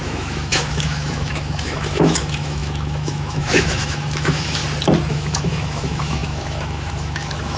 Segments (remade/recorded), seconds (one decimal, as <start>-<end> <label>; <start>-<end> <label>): 0.0-4.6 remade; 4.6-5.1 recorded; 5.1-7.6 remade

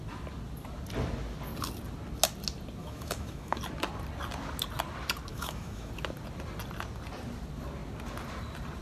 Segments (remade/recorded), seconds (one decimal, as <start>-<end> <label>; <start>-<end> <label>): 0.0-2.8 recorded; 2.8-3.6 remade; 3.6-5.3 recorded; 5.3-5.9 remade; 5.9-8.8 recorded